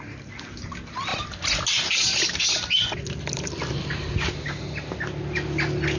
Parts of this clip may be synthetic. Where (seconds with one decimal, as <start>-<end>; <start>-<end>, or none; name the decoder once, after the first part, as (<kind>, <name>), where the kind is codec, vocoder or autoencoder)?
none